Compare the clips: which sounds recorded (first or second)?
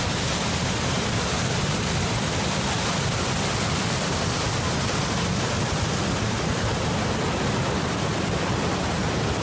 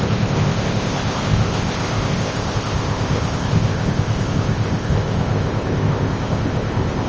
first